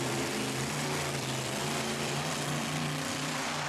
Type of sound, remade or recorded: remade